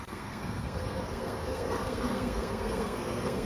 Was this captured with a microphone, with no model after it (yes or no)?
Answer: no